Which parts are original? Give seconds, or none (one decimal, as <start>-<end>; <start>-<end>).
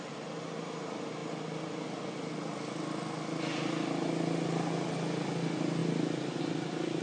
0.0-7.0